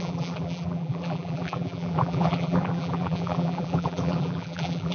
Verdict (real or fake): fake